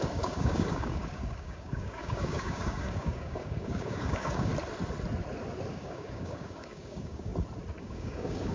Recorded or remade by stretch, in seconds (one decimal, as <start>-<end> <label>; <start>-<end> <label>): 0.0-4.5 remade; 4.5-5.7 recorded; 5.7-7.3 remade; 7.3-7.8 recorded; 7.8-8.5 remade